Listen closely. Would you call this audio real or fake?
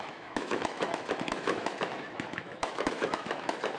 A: fake